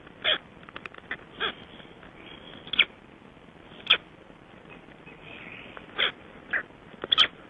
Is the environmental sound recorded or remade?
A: recorded